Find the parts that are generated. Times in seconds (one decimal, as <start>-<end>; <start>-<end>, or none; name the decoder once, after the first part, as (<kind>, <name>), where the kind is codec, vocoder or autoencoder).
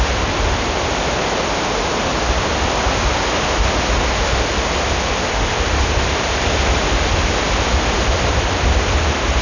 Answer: none